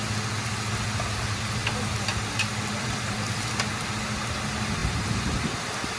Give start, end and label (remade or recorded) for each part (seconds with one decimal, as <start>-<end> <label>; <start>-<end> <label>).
0.0-1.6 recorded; 1.6-3.3 remade; 3.3-6.0 recorded